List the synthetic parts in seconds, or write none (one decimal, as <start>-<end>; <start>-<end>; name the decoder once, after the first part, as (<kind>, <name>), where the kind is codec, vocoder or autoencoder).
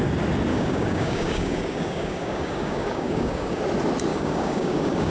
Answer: 0.5-3.6 (codec, DAC); 4.1-5.1